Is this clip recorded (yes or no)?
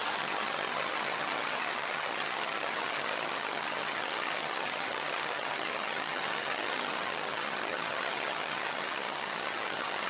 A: no